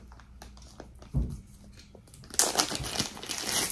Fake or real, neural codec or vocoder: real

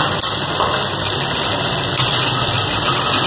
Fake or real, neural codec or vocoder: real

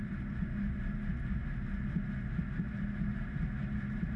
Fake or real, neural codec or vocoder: real